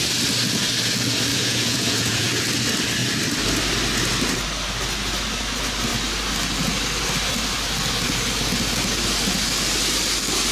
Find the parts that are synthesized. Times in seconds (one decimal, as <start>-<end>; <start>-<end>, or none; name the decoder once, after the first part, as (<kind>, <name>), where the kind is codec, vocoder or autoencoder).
1.3-2.3 (vocoder, Vocos)